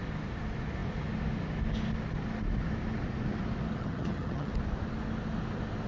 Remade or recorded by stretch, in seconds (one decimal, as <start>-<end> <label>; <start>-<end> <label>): 0.0-3.8 recorded; 3.8-4.5 remade; 4.5-5.9 recorded